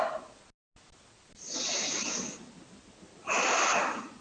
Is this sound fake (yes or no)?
no